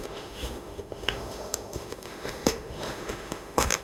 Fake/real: fake